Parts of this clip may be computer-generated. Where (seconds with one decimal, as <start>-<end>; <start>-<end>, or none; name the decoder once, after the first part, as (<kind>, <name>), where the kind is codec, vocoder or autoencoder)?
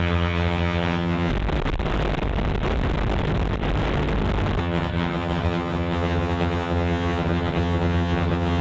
0.0-1.3 (vocoder, HiFi-GAN); 4.6-8.6